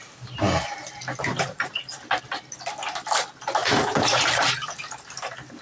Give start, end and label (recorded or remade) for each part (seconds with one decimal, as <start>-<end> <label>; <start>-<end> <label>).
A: 0.0-1.3 recorded; 1.3-1.9 remade; 1.9-3.6 recorded; 3.6-4.2 remade; 4.2-5.6 recorded